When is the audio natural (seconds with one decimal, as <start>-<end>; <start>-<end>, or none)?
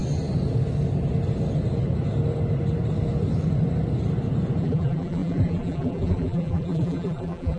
0.0-4.6